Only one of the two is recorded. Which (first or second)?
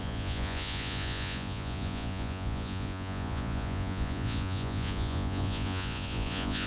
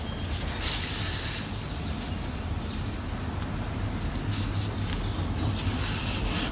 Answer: second